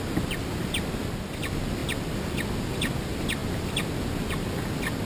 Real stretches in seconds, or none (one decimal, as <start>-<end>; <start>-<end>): 0.0-5.1